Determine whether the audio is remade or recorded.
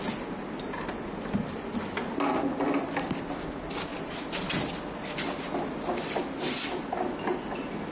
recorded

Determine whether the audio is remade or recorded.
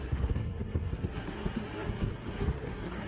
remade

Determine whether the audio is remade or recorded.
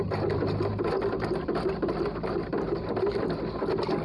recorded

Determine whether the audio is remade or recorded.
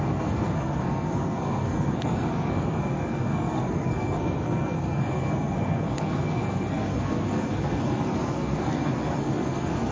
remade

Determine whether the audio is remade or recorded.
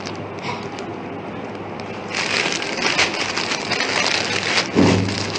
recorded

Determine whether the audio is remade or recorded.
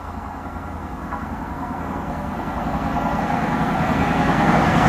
remade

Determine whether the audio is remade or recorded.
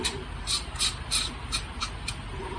recorded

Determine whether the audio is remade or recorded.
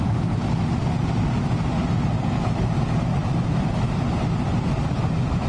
recorded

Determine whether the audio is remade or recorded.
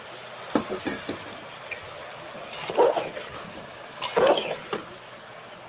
recorded